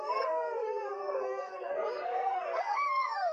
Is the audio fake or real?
fake